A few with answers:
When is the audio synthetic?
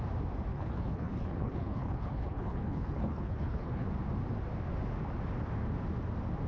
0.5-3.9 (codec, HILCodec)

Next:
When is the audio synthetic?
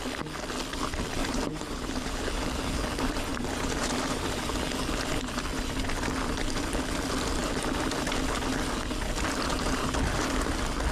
1.2-2.7 (vocoder, BigVGAN v2); 3.3-4.5